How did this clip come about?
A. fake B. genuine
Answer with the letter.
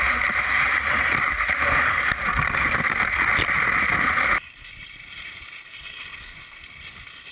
B